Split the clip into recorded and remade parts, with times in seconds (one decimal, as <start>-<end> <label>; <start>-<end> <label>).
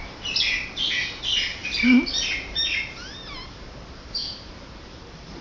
0.0-4.2 recorded; 4.2-5.4 remade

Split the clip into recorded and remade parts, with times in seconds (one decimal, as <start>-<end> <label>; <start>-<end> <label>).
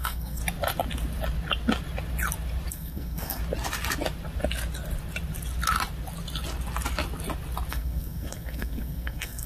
0.0-0.4 remade; 0.4-2.7 recorded; 2.7-3.4 remade; 3.4-7.7 recorded; 7.7-9.5 remade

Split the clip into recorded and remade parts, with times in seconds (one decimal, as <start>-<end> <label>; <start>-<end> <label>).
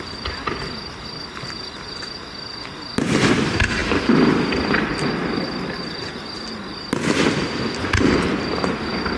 0.0-9.2 recorded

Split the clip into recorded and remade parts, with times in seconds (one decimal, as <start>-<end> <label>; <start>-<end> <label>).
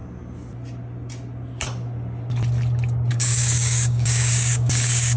0.0-3.1 recorded; 3.1-5.2 remade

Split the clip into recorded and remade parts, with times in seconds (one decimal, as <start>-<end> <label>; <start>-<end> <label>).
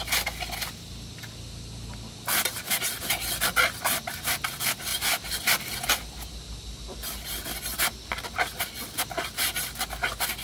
0.0-10.4 recorded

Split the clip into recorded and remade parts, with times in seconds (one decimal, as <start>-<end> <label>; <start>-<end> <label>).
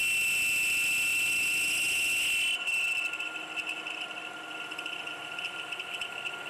0.0-6.5 recorded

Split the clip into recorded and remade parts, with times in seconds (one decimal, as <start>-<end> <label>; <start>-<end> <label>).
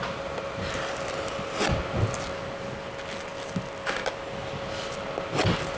0.0-5.8 recorded